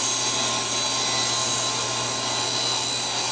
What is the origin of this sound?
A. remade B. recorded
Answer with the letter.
B